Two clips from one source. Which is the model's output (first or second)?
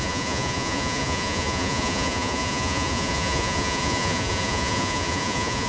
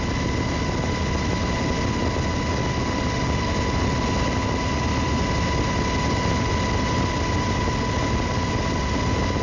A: first